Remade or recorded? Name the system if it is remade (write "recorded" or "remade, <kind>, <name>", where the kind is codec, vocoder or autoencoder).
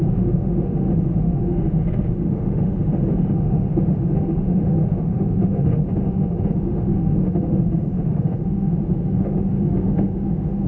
remade, autoencoder, DAC-VAE